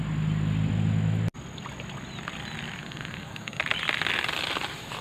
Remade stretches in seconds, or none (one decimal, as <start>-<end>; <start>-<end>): 2.8-3.6